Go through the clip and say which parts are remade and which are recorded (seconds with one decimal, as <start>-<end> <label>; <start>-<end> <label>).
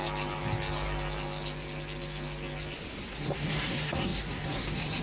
0.0-3.0 recorded; 3.0-5.0 remade